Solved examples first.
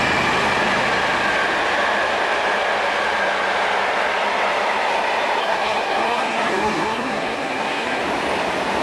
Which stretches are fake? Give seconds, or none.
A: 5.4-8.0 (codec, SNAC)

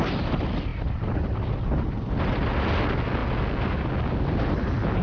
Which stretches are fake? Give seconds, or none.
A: none

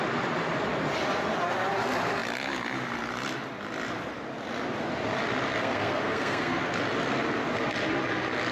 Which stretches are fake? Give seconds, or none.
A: 5.6-6.6 (codec, SNAC)

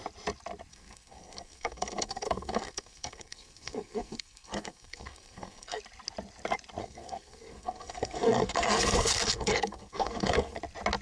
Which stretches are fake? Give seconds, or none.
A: 0.7-5.8 (codec, SNAC); 6.8-10.6

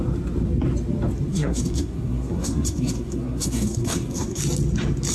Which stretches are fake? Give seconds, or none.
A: 1.3-4.4 (codec, SNAC)

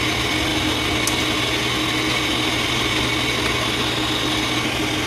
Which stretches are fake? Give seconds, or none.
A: none